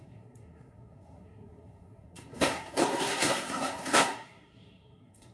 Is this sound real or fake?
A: fake